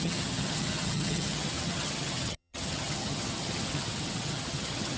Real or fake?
fake